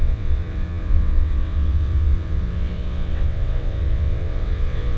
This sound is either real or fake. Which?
fake